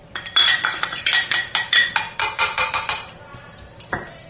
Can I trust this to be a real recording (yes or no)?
no